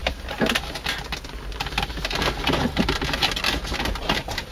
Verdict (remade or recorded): recorded